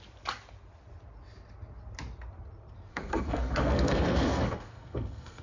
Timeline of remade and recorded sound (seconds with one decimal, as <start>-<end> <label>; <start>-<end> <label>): 0.0-2.9 recorded; 2.9-5.4 remade